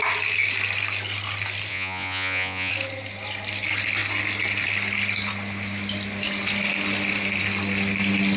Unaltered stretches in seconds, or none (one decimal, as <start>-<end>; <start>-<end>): 0.0-1.7; 2.7-8.4